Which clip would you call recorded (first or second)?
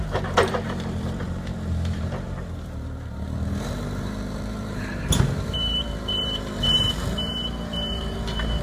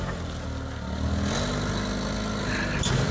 second